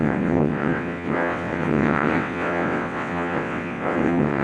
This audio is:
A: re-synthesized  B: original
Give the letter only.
A